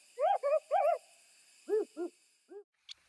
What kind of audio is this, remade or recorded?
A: recorded